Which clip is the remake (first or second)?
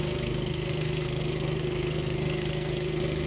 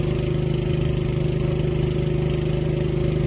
first